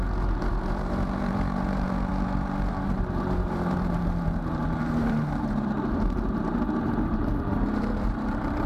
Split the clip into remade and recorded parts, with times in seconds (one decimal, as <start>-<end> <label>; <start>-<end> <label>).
0.0-8.7 remade